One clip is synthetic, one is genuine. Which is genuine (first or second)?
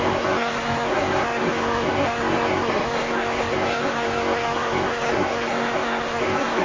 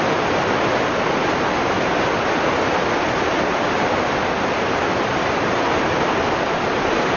second